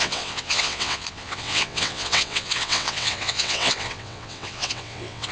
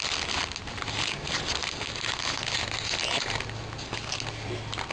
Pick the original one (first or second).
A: second